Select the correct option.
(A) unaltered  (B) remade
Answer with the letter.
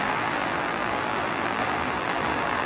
B